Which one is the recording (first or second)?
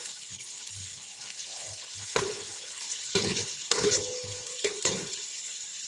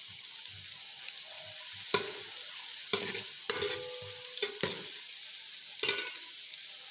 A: second